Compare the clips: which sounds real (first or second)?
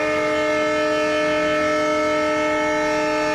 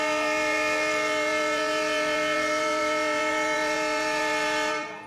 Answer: first